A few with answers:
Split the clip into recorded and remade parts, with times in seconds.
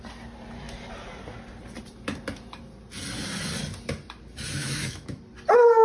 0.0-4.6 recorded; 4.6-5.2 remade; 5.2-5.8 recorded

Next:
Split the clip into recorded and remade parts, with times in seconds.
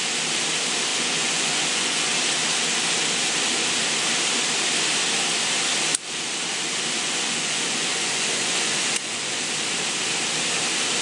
0.0-0.9 recorded; 0.9-2.1 remade; 2.1-7.0 recorded; 7.0-9.4 remade; 9.4-11.0 recorded